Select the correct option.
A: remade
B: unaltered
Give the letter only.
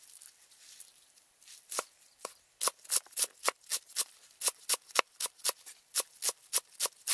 B